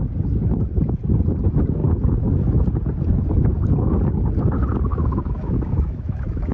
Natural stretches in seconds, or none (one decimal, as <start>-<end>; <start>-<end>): 0.0-4.9